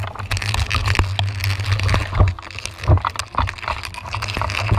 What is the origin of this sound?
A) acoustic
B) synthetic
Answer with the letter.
A